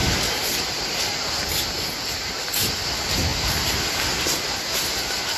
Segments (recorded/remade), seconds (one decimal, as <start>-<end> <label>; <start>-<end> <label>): 0.0-0.9 remade; 0.9-5.4 recorded